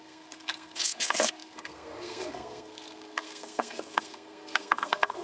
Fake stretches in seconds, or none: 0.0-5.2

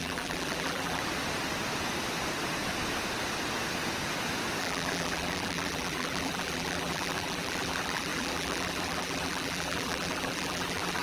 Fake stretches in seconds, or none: 0.0-1.0; 4.6-11.0

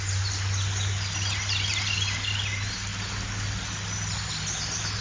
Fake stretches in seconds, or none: none